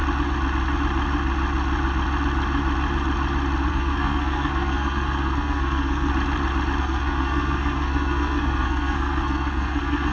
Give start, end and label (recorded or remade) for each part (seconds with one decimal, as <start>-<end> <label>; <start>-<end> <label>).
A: 0.0-3.7 recorded; 3.7-6.1 remade; 6.1-6.8 recorded; 6.8-10.1 remade